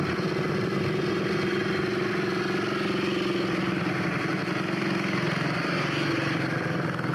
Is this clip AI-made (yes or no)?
no